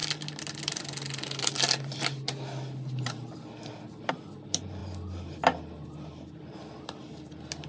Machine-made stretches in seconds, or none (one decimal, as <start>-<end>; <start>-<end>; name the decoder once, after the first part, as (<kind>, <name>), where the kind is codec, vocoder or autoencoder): none